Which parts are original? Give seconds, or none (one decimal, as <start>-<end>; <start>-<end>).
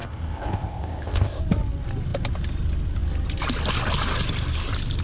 1.4-5.0